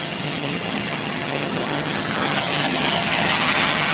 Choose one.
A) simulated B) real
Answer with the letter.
A